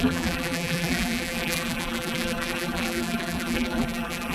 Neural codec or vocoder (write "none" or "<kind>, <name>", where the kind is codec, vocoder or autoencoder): vocoder, BigVGAN v2